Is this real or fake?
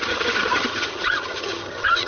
fake